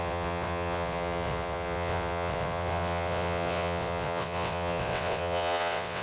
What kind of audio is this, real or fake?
fake